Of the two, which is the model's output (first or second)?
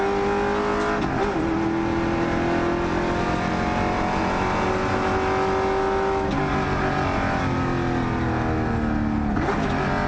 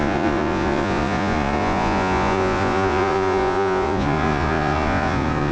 second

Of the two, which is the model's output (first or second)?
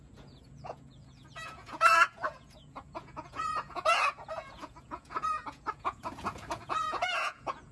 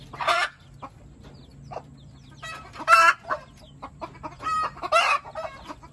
first